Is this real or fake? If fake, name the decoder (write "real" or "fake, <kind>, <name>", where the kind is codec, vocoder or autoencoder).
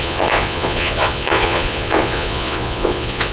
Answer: fake, vocoder, Vocos